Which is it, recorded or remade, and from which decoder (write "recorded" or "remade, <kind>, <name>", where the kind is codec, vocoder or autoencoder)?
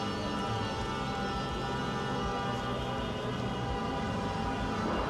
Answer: recorded